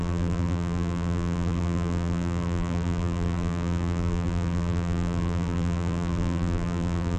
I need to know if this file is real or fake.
fake